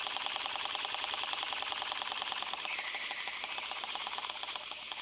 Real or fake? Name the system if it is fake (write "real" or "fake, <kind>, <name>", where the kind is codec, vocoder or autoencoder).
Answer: fake, vocoder, BigVGAN v2